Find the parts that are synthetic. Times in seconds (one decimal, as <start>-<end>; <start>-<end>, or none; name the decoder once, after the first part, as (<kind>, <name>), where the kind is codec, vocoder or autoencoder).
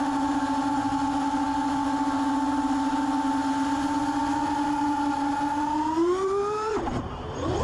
none